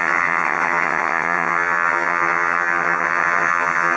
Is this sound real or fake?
fake